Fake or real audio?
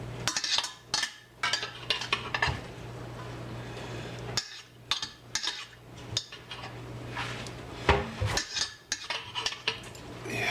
real